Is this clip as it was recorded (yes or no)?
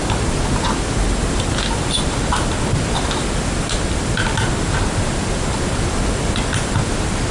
yes